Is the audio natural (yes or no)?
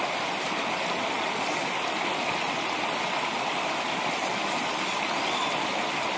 yes